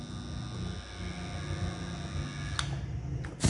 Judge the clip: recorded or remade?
recorded